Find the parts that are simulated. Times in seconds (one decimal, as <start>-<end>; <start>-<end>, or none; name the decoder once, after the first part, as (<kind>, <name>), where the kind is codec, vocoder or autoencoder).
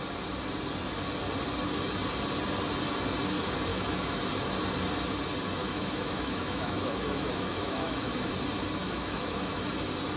3.7-4.2 (autoencoder, DAC-VAE); 5.6-8.3; 8.8-9.7